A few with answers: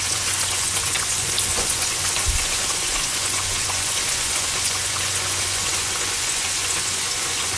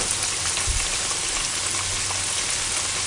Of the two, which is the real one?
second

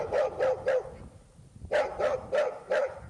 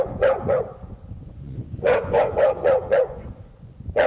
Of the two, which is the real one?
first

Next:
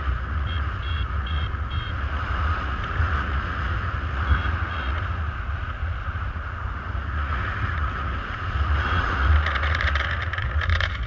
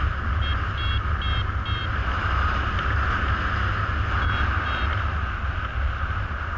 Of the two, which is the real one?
second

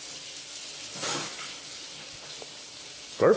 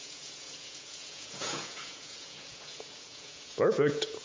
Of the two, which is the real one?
first